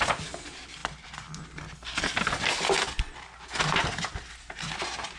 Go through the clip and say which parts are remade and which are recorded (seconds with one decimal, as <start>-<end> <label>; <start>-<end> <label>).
0.0-5.2 recorded

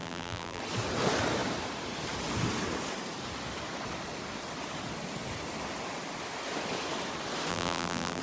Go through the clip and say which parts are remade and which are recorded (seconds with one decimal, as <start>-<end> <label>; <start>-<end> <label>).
0.0-0.6 remade; 0.6-7.5 recorded; 7.5-8.2 remade

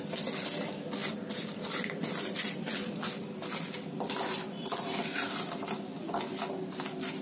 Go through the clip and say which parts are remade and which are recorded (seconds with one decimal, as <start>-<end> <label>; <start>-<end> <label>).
0.0-7.2 recorded

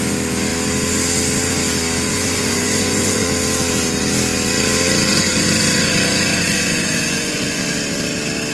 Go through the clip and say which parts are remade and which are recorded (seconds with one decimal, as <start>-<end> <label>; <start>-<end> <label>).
0.0-2.1 recorded; 2.1-3.3 remade; 3.3-5.1 recorded; 5.1-7.6 remade; 7.6-8.5 recorded

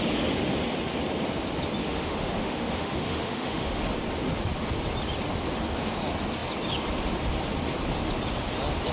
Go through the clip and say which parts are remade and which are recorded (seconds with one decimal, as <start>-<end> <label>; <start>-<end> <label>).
0.0-1.8 recorded; 1.8-3.8 remade; 3.8-8.9 recorded

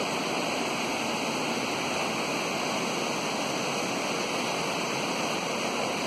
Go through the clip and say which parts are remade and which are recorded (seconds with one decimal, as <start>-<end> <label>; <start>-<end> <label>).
0.0-0.9 remade; 0.9-4.6 recorded; 4.6-6.1 remade